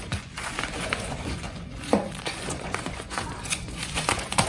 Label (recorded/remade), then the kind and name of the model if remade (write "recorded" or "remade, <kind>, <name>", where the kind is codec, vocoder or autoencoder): remade, vocoder, Vocos